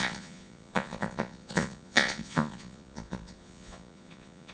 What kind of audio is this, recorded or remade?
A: remade